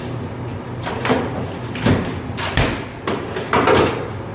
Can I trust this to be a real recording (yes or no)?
yes